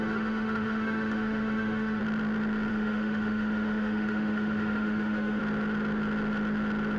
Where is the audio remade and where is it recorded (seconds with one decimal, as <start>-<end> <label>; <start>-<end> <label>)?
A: 0.0-2.0 remade; 2.0-2.7 recorded; 2.7-5.4 remade; 5.4-7.0 recorded